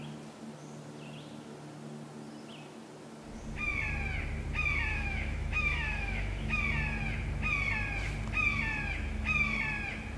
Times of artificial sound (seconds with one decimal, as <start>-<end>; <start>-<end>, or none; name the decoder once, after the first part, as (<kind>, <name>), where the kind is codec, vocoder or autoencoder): 4.9-6.6 (autoencoder, DAC-VAE)